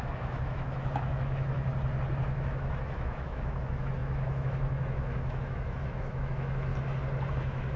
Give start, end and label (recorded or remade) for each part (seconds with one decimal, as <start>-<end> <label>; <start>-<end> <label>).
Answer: 0.0-1.7 remade; 1.7-2.2 recorded; 2.2-6.7 remade; 6.7-7.3 recorded; 7.3-7.8 remade